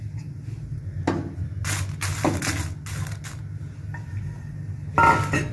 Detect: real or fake real